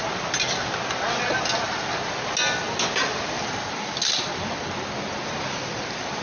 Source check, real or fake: real